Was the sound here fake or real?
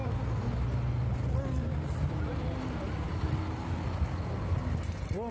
real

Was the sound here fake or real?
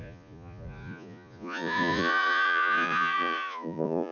fake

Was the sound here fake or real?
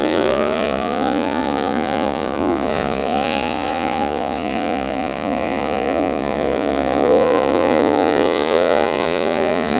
fake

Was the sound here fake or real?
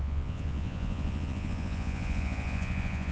fake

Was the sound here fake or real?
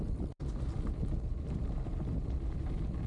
real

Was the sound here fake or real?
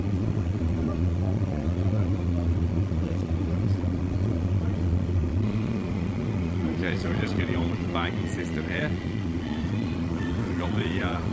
fake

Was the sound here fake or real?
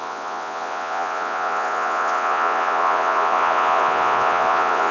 fake